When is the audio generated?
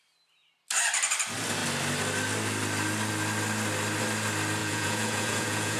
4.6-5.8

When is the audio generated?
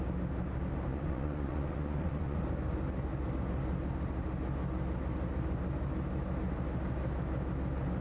0.9-2.4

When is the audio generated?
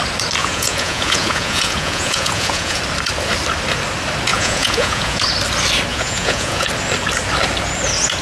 0.4-2.8; 4.3-5.2; 5.9-6.7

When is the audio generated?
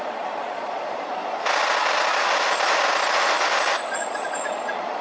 0.0-1.2; 3.8-5.0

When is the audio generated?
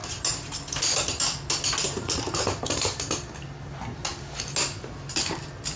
none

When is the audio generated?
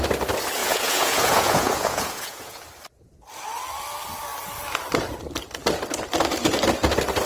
0.6-2.6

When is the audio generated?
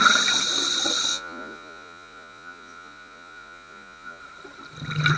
1.1-4.2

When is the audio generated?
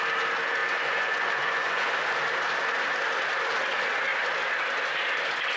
0.6-1.9